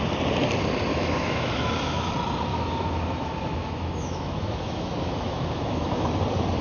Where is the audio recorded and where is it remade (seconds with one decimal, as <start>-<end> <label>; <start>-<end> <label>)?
0.0-0.9 recorded; 0.9-2.1 remade; 2.1-2.5 recorded; 2.5-6.1 remade; 6.1-6.6 recorded